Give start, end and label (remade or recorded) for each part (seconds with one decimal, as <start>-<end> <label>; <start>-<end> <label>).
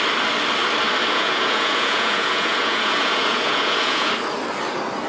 0.0-1.0 recorded; 1.0-4.1 remade; 4.1-5.1 recorded